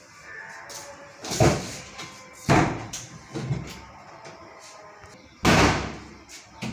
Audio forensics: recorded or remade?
recorded